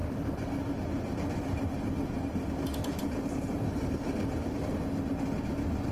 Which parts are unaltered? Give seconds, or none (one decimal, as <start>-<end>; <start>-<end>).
0.0-2.9; 4.6-5.9